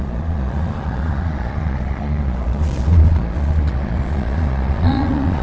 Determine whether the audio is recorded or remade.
remade